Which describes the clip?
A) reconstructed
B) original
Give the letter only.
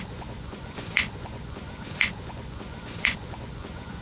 A